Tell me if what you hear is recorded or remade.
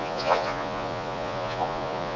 remade